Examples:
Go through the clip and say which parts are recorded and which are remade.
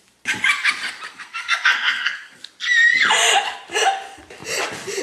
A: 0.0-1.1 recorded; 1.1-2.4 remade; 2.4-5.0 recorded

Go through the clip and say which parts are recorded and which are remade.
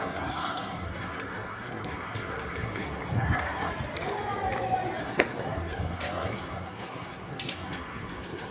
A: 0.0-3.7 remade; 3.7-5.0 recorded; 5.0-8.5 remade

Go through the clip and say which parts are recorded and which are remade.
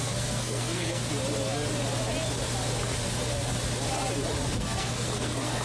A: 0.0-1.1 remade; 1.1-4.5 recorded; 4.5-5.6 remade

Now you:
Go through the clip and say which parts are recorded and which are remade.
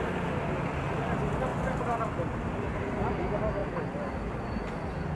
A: 0.0-5.2 recorded